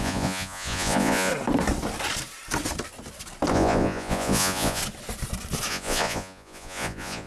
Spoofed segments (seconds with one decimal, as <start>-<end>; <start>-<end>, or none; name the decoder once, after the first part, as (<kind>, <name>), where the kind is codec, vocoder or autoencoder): 0.0-1.3 (vocoder, Vocos); 3.5-4.8; 5.7-7.3